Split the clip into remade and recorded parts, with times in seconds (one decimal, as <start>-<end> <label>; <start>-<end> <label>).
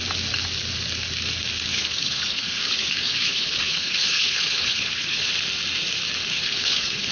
0.0-1.7 recorded; 1.7-5.3 remade; 5.3-6.3 recorded; 6.3-7.1 remade